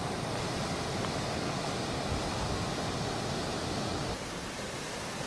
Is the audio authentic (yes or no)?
yes